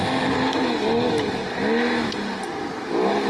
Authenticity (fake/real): real